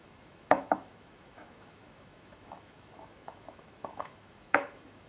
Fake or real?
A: fake